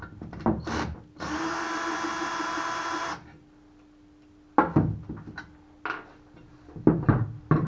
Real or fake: real